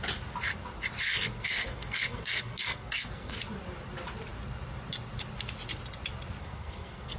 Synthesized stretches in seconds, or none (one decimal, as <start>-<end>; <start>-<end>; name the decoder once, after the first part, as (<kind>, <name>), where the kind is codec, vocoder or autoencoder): 1.1-3.3 (codec, SNAC); 6.4-7.2